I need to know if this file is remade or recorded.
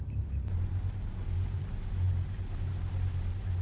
recorded